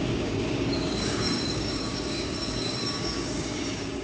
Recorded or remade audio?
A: remade